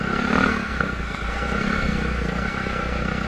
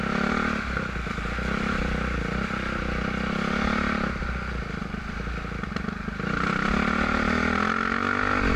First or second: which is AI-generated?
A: first